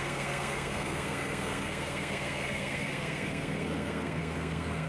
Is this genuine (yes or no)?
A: no